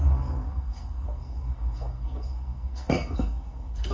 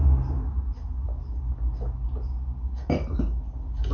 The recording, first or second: second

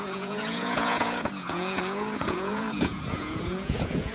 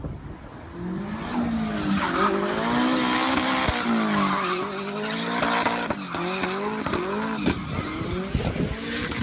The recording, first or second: second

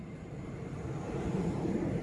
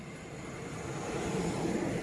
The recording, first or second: second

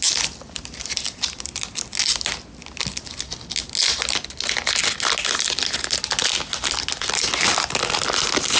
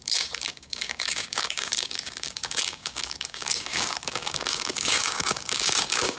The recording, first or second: first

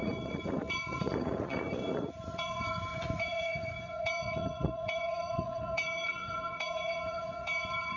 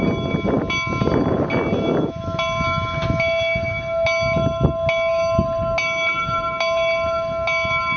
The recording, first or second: second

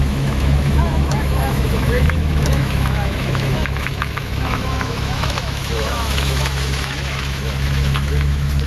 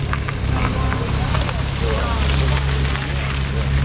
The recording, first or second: second